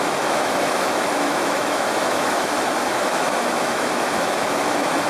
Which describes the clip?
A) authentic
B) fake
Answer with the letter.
B